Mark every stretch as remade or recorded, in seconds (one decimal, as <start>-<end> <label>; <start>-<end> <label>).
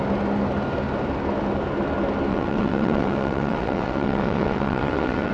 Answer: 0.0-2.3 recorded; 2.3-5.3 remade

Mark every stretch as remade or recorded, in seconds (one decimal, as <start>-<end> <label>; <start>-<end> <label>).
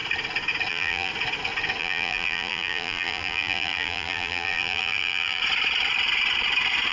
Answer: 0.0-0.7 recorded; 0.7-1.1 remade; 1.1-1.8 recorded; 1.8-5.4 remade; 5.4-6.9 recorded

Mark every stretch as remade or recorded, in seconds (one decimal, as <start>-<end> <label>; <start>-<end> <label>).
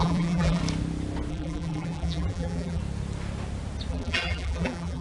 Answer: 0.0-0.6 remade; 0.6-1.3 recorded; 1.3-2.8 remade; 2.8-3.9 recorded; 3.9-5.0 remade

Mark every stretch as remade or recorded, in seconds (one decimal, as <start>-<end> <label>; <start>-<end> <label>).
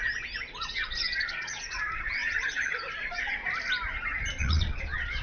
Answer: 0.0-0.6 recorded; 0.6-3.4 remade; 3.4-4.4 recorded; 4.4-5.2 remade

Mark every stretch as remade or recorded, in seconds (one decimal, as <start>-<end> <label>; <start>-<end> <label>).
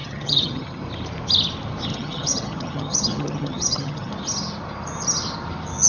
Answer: 0.0-0.8 remade; 0.8-1.9 recorded; 1.9-4.1 remade; 4.1-5.9 recorded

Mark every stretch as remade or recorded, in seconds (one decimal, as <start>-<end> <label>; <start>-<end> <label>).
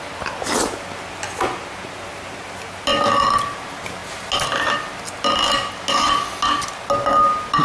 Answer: 0.0-7.6 recorded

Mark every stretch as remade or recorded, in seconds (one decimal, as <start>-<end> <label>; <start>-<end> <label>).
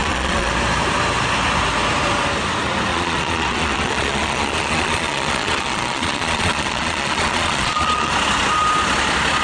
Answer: 0.0-0.5 remade; 0.5-2.9 recorded; 2.9-8.1 remade; 8.1-9.4 recorded